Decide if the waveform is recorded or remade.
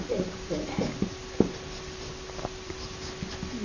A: recorded